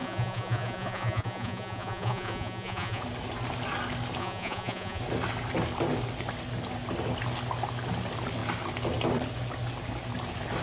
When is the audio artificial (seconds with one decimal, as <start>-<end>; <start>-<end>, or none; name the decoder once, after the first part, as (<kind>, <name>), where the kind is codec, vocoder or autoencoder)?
0.0-3.0 (vocoder, Vocos); 4.2-5.0